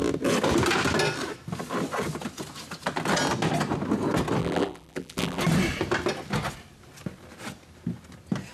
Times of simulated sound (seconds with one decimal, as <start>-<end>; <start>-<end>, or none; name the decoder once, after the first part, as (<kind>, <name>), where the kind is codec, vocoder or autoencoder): 4.4-5.4 (vocoder, BigVGAN v2)